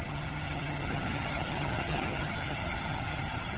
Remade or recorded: remade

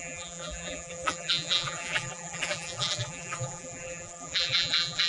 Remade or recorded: remade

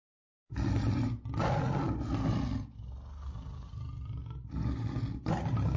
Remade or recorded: recorded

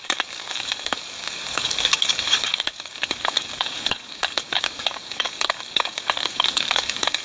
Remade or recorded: remade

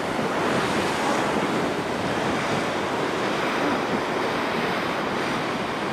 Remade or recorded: recorded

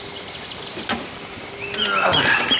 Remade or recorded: remade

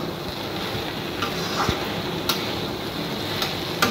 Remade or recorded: recorded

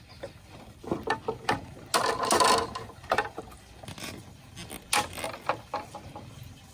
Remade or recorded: recorded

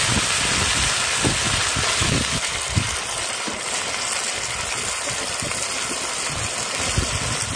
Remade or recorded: recorded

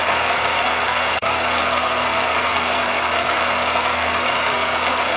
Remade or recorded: remade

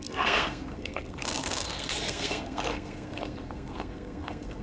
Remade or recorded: remade